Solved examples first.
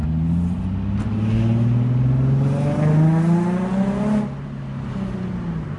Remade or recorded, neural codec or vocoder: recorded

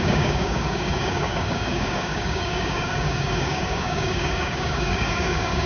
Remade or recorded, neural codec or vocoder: remade, codec, DAC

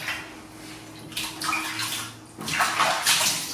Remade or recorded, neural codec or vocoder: recorded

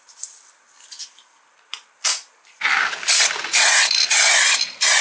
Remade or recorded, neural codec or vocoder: recorded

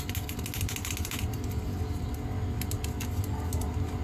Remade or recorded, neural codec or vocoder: recorded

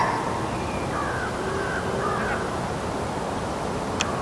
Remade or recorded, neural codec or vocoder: recorded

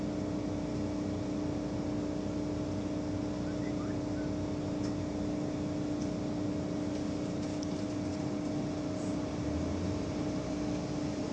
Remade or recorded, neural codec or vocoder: recorded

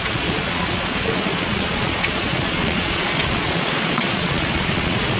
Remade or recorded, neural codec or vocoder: remade, vocoder, Vocos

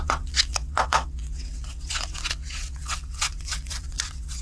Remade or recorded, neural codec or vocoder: remade, vocoder, WaveNeXt